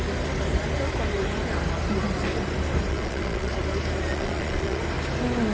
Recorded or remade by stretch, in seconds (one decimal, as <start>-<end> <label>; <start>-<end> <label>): 0.0-2.9 recorded; 2.9-3.5 remade; 3.5-4.1 recorded; 4.1-4.8 remade; 4.8-5.5 recorded